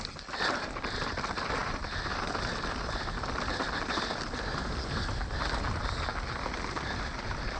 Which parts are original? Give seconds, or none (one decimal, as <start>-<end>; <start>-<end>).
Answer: 0.0-7.6